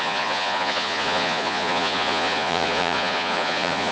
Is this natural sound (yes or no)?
no